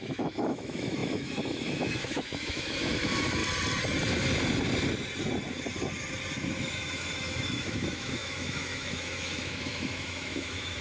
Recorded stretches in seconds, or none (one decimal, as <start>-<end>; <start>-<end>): 3.4-6.6